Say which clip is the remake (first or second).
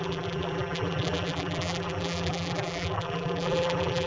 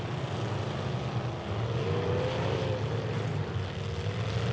first